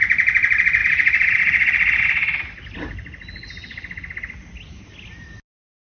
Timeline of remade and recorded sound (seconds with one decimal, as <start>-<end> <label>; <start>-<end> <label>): 0.0-5.8 recorded